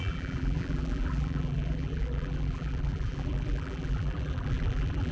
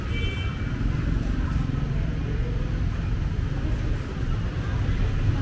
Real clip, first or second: second